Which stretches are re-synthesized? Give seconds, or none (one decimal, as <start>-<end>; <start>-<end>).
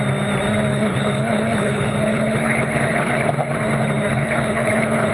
0.7-3.3; 4.1-5.1